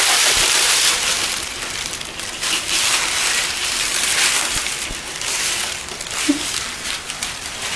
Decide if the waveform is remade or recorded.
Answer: remade